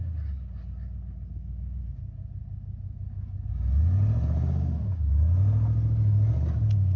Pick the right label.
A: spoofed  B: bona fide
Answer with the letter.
B